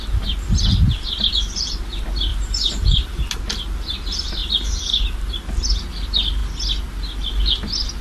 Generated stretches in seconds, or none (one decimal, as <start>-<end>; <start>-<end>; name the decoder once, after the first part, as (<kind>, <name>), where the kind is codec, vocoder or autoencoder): 2.3-3.2 (vocoder, BigVGAN v2); 4.4-5.3